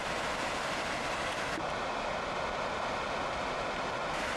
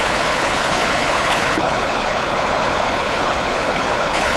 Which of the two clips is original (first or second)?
first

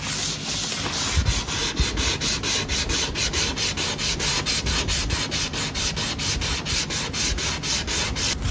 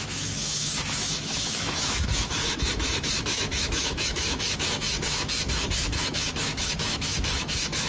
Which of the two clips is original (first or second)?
first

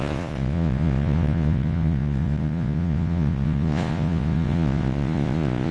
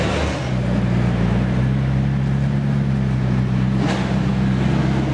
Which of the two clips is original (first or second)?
second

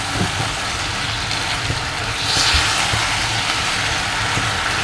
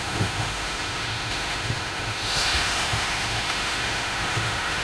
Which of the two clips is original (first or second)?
first